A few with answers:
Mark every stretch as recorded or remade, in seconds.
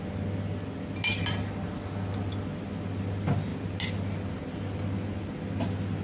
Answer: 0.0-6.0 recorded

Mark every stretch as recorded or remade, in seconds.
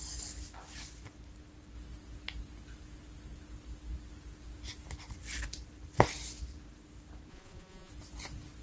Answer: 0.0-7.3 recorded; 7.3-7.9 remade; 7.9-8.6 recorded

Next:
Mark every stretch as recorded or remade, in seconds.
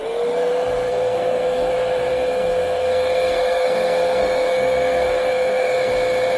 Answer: 0.0-0.9 recorded; 0.9-1.7 remade; 1.7-2.1 recorded; 2.1-5.9 remade; 5.9-6.4 recorded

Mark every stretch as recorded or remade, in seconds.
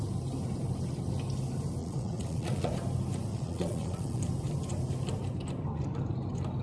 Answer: 0.0-1.8 recorded; 1.8-2.7 remade; 2.7-3.3 recorded; 3.3-4.2 remade; 4.2-6.6 recorded